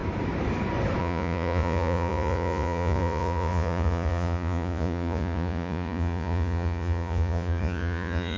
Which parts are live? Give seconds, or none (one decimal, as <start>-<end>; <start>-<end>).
0.0-1.0

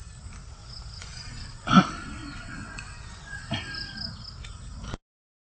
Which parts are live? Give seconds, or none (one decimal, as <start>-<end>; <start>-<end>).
0.0-0.6; 1.8-2.2; 3.4-5.5

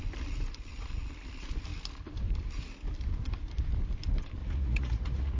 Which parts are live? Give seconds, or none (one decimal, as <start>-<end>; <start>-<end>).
0.0-4.4

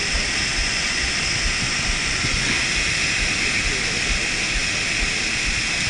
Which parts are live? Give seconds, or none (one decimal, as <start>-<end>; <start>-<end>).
0.0-0.6; 1.1-2.0; 2.6-5.9

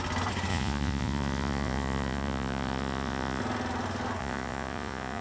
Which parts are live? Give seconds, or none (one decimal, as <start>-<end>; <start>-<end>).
0.0-0.5; 3.4-4.2